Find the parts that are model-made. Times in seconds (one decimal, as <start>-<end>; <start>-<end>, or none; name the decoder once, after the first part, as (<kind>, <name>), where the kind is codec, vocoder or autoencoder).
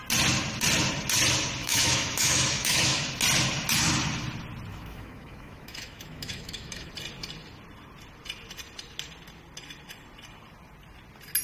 1.6-3.1 (autoencoder, DAC-VAE); 4.7-6.9